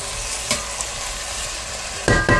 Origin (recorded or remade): recorded